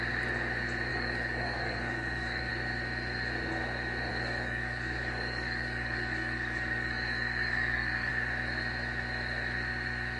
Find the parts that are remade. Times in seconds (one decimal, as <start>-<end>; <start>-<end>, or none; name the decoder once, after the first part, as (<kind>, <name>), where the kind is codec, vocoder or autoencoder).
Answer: 0.9-2.5 (codec, DAC); 4.1-8.1

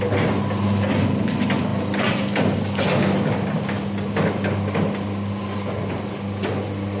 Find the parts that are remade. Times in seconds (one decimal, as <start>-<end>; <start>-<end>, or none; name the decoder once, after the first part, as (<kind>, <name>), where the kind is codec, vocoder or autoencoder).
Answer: none

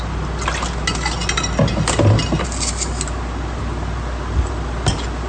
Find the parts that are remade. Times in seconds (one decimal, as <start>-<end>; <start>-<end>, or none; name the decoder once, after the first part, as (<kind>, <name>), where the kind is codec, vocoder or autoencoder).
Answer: none

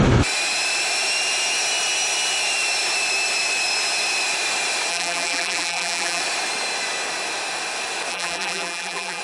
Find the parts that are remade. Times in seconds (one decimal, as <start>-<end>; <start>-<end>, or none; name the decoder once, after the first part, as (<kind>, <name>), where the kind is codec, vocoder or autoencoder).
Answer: 4.9-6.2 (vocoder, BigVGAN v2); 8.1-9.2